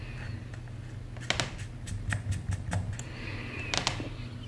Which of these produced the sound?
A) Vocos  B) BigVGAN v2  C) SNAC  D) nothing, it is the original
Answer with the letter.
D